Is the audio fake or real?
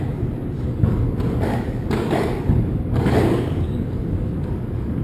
fake